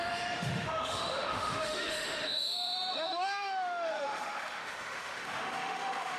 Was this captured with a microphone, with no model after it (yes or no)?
no